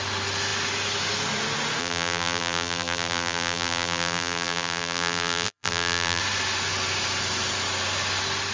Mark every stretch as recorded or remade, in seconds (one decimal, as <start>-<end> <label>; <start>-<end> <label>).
0.0-1.8 recorded; 1.8-6.2 remade; 6.2-8.5 recorded